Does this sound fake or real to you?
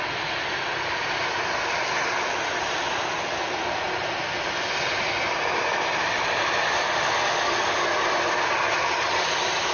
real